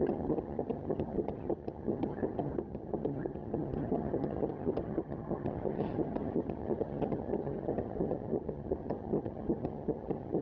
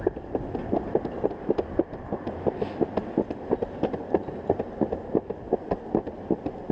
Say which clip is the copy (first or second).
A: first